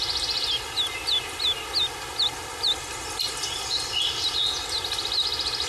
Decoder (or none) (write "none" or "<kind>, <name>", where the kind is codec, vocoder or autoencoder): none